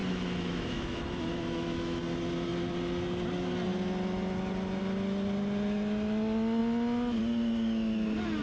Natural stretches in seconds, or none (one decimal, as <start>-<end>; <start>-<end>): 2.0-8.4